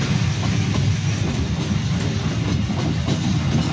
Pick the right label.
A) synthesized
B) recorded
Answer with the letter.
A